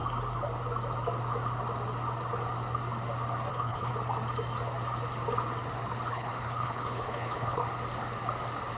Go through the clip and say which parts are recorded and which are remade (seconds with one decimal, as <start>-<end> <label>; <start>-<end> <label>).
0.0-3.5 recorded; 3.5-3.9 remade; 3.9-6.1 recorded; 6.1-7.6 remade; 7.6-8.8 recorded